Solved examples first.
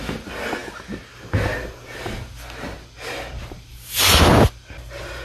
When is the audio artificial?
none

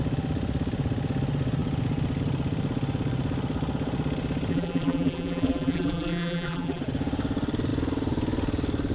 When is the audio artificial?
4.5-6.8 (vocoder, BigVGAN v2)

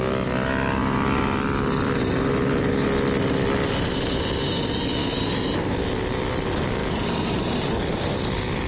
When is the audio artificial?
5.0-5.8 (vocoder, BigVGAN v2); 6.8-7.7

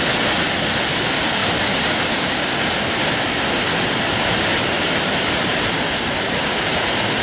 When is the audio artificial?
4.5-6.8 (vocoder, BigVGAN v2)